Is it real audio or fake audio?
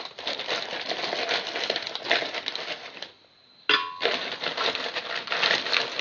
real